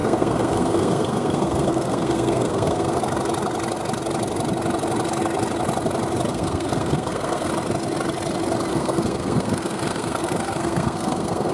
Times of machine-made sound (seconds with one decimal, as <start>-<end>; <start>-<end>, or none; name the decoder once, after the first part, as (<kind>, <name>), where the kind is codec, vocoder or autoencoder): 0.0-3.0 (codec, SNAC); 6.3-7.5; 8.7-11.5